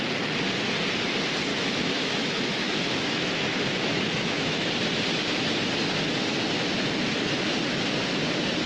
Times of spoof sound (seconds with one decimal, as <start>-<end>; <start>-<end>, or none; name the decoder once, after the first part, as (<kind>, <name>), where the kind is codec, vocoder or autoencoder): 1.5-4.7 (autoencoder, DAC-VAE)